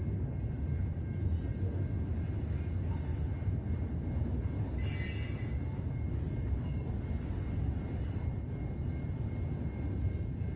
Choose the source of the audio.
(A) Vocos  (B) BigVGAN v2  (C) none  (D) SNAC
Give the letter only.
C